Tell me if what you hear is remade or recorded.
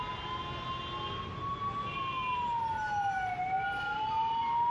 recorded